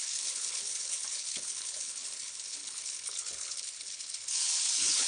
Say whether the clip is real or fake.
fake